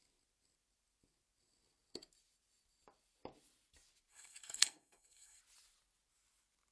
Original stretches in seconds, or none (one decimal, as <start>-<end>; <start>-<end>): 0.0-4.1; 5.4-6.7

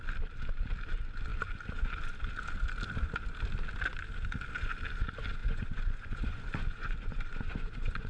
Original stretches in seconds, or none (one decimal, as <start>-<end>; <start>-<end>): 0.0-5.4

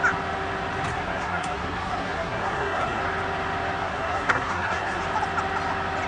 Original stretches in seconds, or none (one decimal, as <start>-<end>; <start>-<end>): 0.0-0.9; 3.0-3.8; 5.0-6.1

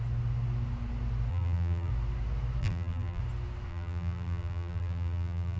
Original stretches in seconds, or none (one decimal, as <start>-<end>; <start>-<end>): 0.0-1.3; 1.9-2.6; 3.2-3.7

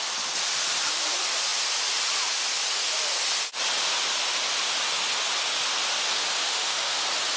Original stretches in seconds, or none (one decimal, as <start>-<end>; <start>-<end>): 0.0-6.4; 7.0-7.4